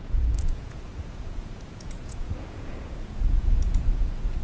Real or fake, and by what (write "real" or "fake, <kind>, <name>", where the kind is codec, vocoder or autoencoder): fake, vocoder, Vocos